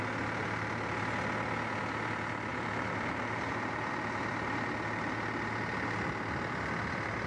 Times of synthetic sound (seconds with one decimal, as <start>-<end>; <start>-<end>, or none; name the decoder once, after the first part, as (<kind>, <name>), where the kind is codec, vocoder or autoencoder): 2.5-3.9 (vocoder, BigVGAN v2)